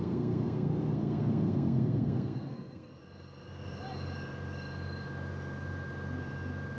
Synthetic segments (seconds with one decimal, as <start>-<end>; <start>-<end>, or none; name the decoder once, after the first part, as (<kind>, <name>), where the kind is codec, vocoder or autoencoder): 0.0-3.0 (codec, SNAC)